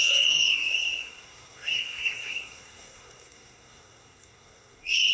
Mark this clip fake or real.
fake